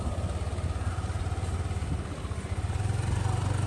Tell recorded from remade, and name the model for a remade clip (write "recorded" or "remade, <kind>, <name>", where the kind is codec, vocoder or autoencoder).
recorded